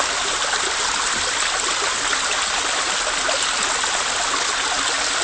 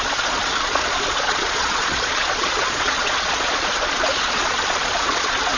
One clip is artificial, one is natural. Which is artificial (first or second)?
second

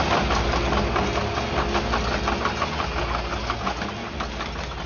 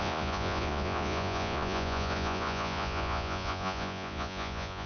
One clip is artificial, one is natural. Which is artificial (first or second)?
second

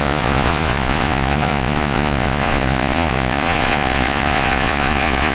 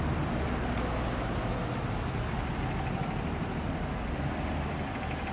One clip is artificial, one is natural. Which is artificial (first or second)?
first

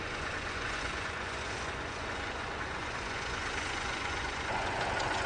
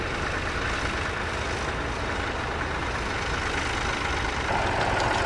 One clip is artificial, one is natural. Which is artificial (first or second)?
first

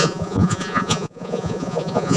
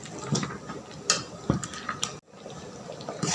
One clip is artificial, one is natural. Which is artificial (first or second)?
first